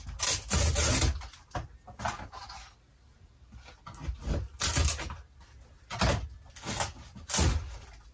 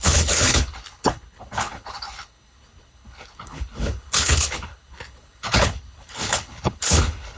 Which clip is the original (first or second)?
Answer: first